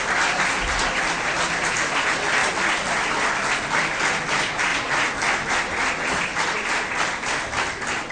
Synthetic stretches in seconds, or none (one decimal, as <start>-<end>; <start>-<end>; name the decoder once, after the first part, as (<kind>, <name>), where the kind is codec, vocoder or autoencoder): 2.4-3.5 (vocoder, BigVGAN v2); 4.7-5.5; 6.3-7.2